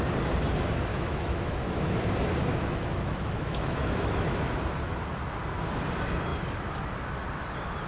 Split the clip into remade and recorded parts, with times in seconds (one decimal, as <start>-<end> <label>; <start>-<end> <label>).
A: 0.0-0.9 recorded; 0.9-1.9 remade; 1.9-2.5 recorded; 2.5-4.6 remade; 4.6-7.9 recorded